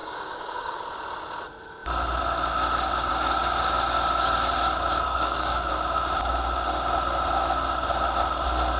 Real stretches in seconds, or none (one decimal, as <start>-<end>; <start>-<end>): 0.8-5.1; 5.7-8.8